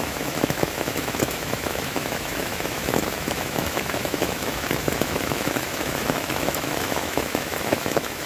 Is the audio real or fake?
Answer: fake